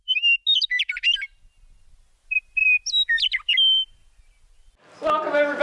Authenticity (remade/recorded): recorded